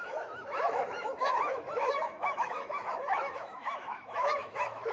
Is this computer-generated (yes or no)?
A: yes